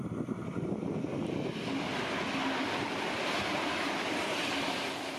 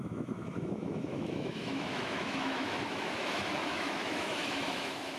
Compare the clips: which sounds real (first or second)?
first